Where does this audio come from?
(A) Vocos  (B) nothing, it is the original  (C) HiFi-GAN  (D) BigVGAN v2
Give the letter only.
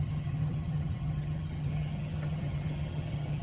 C